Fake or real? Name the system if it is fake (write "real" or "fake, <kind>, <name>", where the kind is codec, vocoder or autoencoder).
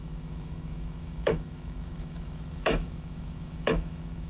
fake, autoencoder, DAC-VAE